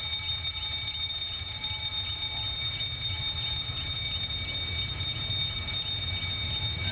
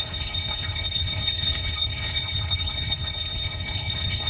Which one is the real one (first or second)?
first